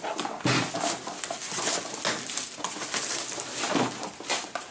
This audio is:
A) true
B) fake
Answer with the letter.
A